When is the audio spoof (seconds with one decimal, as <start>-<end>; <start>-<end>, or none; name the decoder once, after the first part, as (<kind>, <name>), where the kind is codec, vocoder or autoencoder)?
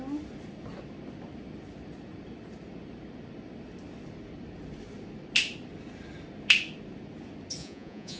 7.6-8.2 (vocoder, Vocos)